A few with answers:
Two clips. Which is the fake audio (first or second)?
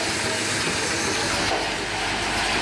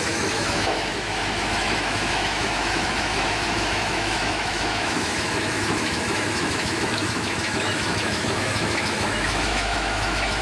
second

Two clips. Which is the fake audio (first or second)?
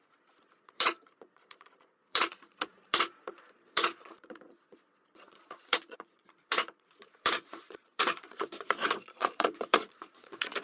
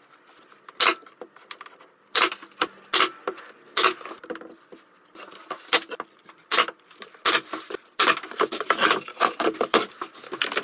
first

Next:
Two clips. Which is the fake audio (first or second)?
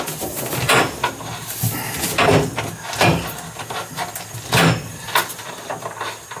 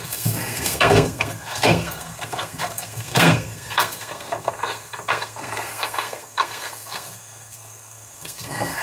second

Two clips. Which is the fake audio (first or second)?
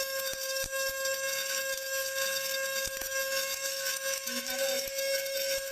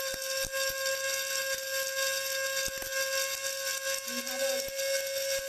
first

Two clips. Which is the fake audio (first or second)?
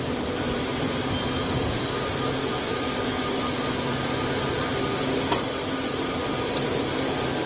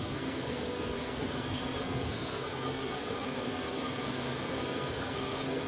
second